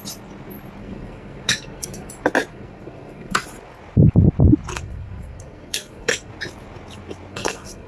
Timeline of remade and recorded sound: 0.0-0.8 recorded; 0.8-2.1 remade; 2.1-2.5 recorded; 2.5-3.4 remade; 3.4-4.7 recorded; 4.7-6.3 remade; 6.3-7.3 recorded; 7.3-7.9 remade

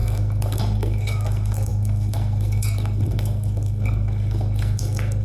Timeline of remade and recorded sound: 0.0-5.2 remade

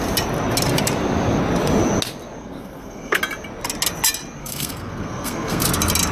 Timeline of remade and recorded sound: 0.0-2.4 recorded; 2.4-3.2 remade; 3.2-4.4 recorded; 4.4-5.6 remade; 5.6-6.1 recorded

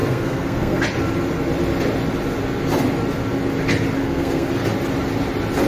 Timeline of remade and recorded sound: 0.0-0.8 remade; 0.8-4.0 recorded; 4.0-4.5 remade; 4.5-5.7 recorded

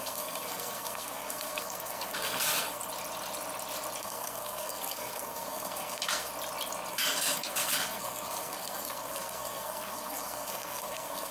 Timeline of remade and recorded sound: 0.0-2.8 remade; 2.8-4.0 recorded; 4.0-6.3 remade; 6.3-6.9 recorded; 6.9-11.3 remade